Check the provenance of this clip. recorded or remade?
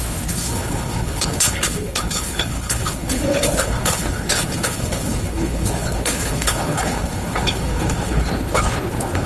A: remade